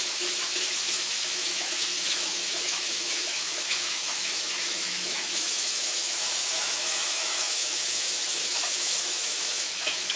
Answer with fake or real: fake